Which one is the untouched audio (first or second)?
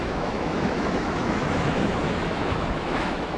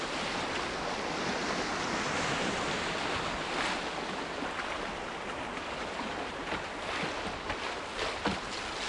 second